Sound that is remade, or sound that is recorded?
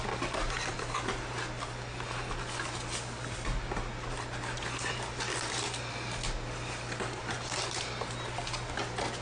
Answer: recorded